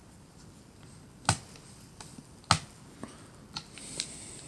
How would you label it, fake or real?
real